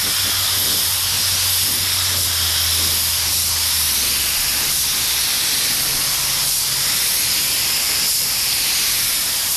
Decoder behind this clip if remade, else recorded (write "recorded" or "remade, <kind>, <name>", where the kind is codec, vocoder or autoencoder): recorded